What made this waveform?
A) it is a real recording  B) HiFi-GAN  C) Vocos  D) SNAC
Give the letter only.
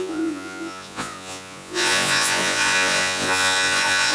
C